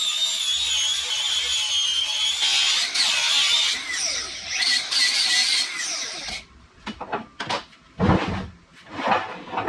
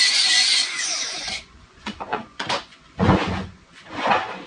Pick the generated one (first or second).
second